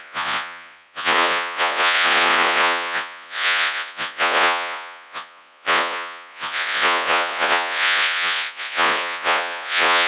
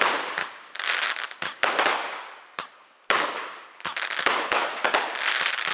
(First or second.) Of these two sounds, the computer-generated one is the first